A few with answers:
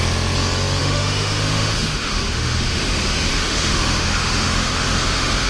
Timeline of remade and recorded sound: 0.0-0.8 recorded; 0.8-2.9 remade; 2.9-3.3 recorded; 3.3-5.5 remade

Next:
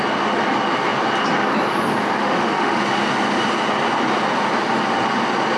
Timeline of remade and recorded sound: 0.0-2.2 recorded; 2.2-2.8 remade; 2.8-5.6 recorded

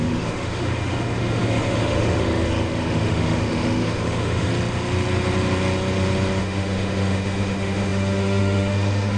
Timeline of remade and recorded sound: 0.0-4.5 remade; 4.5-6.4 recorded; 6.4-9.2 remade

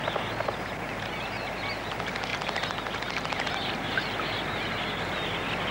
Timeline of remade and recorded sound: 0.0-5.7 recorded